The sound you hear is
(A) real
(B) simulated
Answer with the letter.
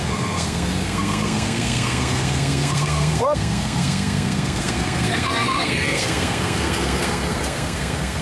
B